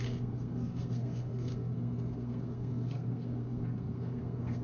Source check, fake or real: fake